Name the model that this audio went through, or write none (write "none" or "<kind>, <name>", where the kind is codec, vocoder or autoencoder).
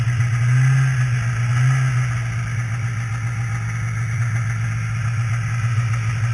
none